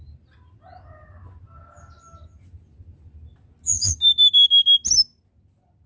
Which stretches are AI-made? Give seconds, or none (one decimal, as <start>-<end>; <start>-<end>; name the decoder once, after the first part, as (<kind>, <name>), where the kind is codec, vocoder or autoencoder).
none